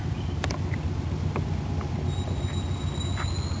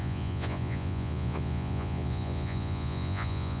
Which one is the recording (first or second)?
first